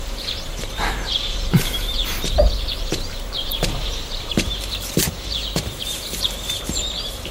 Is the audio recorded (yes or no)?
no